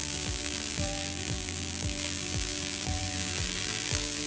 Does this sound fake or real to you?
fake